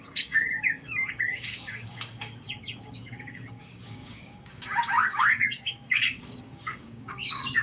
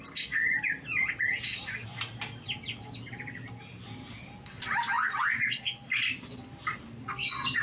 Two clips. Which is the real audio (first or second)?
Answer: second